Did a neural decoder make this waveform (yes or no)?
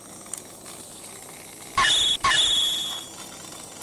no